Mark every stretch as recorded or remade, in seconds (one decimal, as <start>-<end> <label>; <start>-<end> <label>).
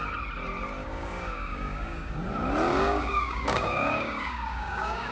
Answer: 0.0-0.8 recorded; 0.8-2.1 remade; 2.1-2.7 recorded; 2.7-5.1 remade